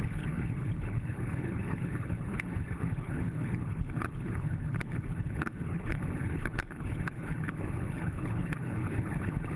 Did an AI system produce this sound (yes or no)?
yes